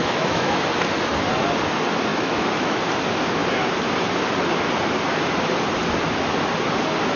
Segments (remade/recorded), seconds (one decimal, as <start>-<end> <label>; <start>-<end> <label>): 0.0-0.6 remade; 0.6-2.1 recorded; 2.1-2.8 remade; 2.8-7.2 recorded